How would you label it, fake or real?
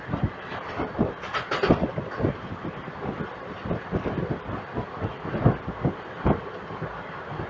real